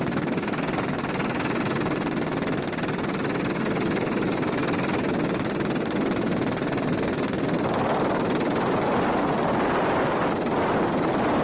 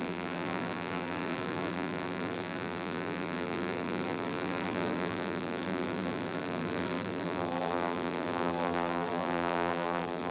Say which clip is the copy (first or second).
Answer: second